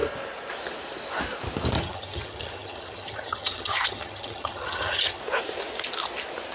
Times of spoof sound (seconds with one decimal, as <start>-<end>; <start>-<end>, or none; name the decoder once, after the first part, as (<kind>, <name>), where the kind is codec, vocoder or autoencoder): 1.8-5.2 (vocoder, HiFi-GAN)